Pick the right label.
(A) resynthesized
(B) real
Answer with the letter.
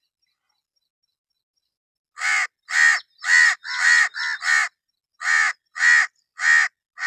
B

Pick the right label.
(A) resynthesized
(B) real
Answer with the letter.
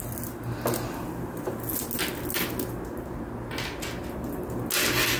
B